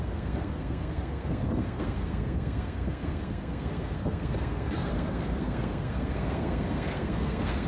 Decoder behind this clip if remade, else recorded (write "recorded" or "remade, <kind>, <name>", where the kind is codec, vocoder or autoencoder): remade, codec, SNAC